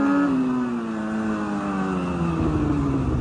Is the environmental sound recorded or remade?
recorded